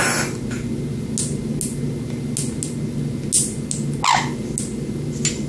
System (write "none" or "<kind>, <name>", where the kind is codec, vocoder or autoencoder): none